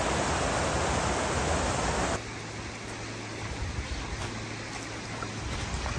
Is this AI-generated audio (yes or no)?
no